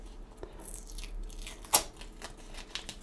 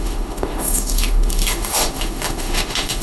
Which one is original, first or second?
first